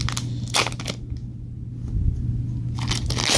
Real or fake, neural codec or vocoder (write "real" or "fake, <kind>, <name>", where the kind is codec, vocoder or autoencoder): real